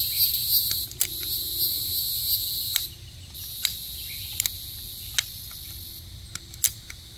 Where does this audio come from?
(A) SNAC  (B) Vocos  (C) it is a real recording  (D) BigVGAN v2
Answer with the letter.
C